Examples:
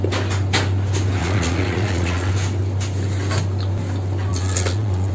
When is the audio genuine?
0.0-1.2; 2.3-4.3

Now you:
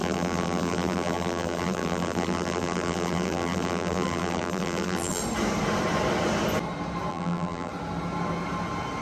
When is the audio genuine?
5.2-7.1; 7.7-9.0